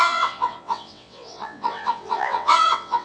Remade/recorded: remade